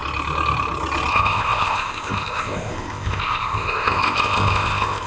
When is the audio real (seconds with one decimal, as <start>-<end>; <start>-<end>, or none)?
0.0-1.1